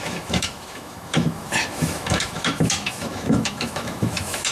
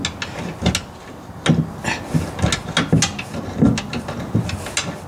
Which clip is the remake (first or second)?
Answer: first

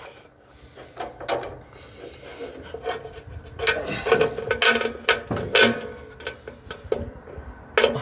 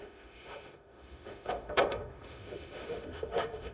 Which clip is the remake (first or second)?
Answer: second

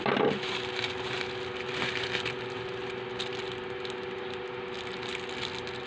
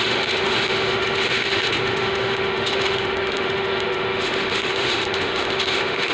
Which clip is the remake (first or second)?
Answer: second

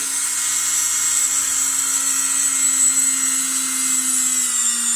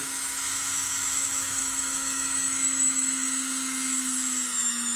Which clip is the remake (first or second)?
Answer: second